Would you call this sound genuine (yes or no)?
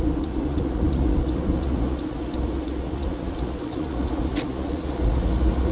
no